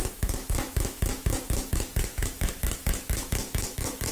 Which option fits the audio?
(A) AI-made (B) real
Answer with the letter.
A